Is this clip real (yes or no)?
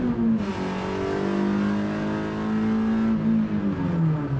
yes